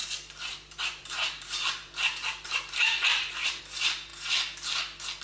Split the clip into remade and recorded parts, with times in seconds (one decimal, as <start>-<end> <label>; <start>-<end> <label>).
0.0-0.5 recorded; 0.5-3.6 remade; 3.6-5.2 recorded

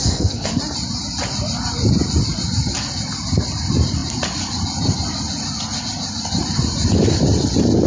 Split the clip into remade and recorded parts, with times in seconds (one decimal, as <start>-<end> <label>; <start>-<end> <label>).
0.0-0.6 remade; 0.6-7.9 recorded

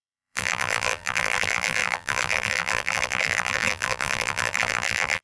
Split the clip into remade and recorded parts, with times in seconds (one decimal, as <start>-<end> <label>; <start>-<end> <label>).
0.0-5.2 remade

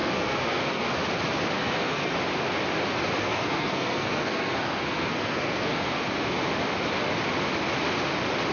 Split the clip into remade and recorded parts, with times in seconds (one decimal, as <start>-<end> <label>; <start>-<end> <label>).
0.0-0.9 remade; 0.9-1.6 recorded; 1.6-2.1 remade; 2.1-3.2 recorded; 3.2-6.0 remade; 6.0-8.5 recorded

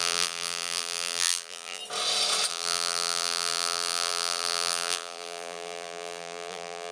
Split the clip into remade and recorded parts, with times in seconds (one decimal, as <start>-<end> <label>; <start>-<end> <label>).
0.0-1.8 remade; 1.8-2.5 recorded; 2.5-6.9 remade